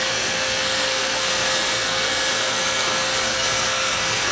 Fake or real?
fake